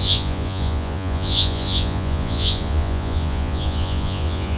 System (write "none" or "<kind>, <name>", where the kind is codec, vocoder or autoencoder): vocoder, Vocos